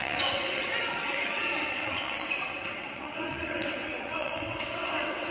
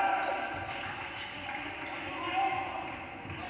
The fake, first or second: first